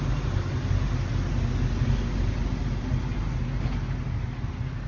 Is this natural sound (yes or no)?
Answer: yes